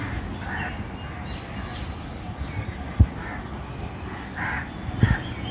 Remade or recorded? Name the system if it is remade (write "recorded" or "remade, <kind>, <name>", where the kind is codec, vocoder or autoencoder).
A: recorded